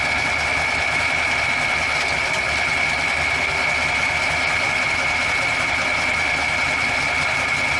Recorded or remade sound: recorded